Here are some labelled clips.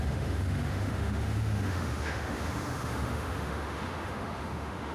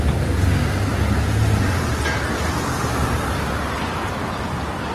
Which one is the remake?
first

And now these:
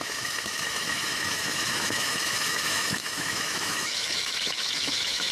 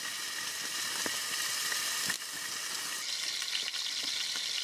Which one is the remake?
first